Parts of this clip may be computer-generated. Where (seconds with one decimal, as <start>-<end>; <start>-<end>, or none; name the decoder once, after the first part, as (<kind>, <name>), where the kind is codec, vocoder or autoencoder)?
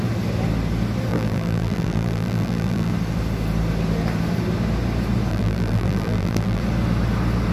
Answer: 1.1-2.9 (vocoder, BigVGAN v2); 5.3-6.6